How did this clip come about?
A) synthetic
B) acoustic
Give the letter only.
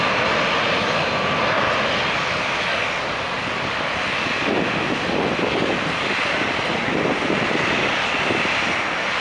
B